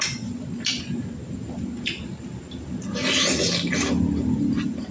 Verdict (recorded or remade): recorded